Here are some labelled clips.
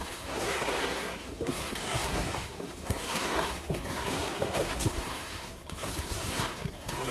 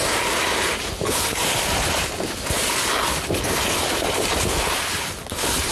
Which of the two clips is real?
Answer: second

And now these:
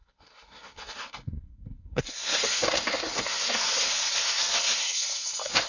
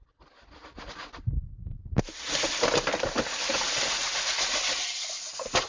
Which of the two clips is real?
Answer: second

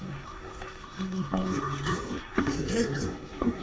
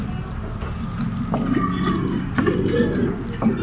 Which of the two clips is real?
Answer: second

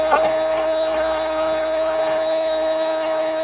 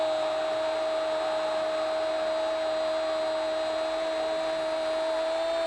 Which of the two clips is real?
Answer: second